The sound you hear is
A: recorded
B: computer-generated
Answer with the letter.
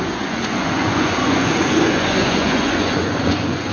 B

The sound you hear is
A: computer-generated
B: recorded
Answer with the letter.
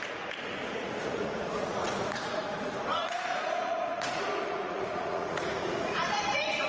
A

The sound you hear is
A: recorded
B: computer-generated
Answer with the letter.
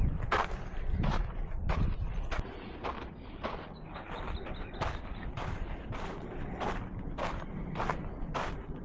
A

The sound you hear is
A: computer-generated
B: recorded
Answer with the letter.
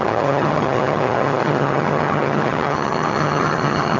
A